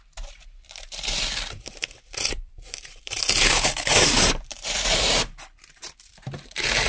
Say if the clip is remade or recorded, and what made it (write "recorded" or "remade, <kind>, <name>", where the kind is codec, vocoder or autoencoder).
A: remade, vocoder, BigVGAN v2